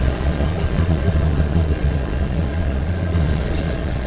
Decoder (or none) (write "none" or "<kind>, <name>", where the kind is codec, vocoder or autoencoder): vocoder, Vocos